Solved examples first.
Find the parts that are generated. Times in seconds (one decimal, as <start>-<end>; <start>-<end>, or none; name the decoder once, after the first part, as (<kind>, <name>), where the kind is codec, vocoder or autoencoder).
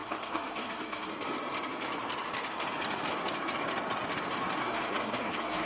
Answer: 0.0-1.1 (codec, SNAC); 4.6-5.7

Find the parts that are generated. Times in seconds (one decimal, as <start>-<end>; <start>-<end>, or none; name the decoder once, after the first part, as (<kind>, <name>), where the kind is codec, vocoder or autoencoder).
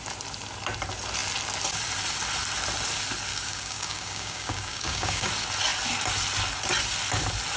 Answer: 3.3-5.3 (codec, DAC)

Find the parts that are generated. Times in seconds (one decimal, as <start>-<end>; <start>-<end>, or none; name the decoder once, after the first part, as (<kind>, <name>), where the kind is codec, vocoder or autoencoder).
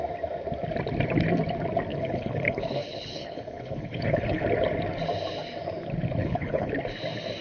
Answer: 1.9-4.4 (codec, HILCodec); 6.2-6.7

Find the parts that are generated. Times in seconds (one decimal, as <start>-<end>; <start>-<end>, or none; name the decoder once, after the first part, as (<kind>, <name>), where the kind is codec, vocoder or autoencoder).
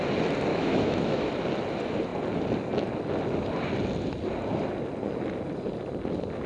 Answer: 0.5-1.3 (autoencoder, DAC-VAE)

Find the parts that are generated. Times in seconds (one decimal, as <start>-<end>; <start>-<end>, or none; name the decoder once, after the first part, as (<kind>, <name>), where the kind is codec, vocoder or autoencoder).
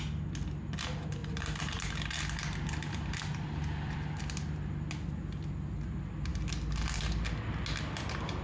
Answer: 1.2-4.2 (vocoder, BigVGAN v2); 6.3-7.0